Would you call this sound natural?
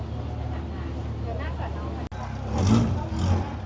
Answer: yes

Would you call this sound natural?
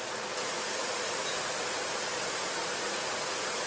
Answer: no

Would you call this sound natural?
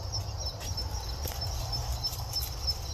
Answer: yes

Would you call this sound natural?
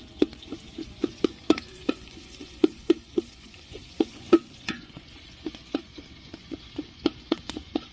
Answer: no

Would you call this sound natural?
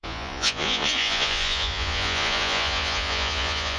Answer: no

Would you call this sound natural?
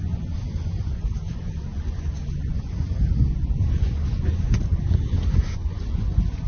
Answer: no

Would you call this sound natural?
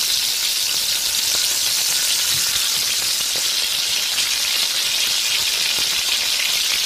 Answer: yes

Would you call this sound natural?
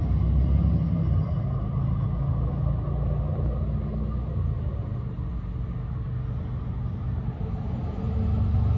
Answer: yes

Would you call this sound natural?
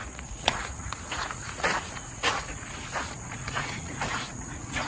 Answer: no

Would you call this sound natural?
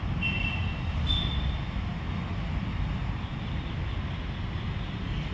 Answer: yes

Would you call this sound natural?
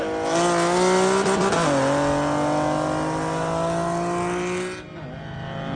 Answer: yes